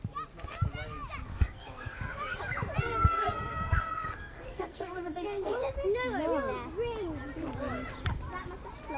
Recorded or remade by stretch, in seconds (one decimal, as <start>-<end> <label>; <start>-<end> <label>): 0.0-1.3 recorded; 1.3-2.4 remade; 2.4-2.9 recorded; 2.9-5.7 remade; 5.7-9.0 recorded